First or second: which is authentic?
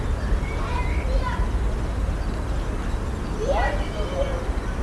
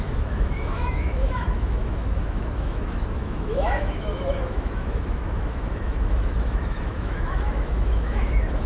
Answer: first